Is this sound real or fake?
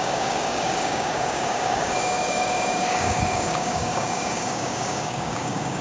fake